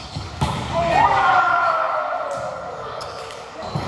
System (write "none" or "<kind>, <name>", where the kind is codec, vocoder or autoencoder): codec, DAC